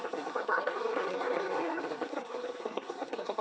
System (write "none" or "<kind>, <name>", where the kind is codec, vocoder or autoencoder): codec, SNAC